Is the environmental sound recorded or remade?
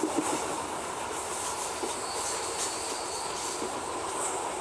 recorded